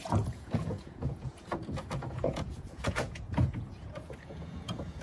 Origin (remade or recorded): remade